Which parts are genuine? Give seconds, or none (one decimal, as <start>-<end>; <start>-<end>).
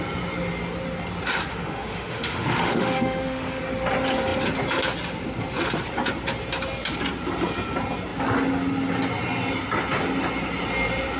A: 0.0-1.5; 3.6-11.2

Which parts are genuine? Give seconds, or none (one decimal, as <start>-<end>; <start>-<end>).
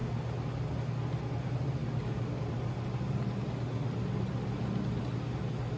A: 0.0-5.8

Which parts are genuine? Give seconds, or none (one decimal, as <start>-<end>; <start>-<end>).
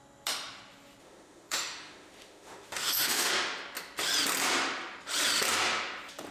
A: 0.0-1.0; 3.3-6.3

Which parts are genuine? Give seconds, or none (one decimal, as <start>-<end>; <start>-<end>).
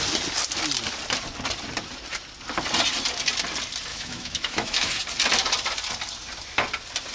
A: 0.0-3.9; 5.0-7.1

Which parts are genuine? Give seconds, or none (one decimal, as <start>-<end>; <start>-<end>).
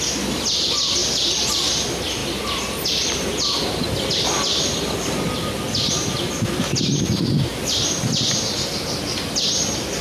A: 0.0-10.0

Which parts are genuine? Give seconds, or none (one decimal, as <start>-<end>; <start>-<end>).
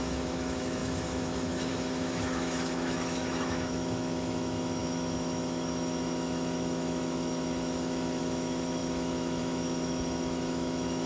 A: none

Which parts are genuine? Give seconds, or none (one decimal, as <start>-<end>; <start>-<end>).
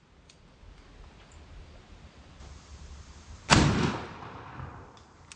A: 0.0-5.4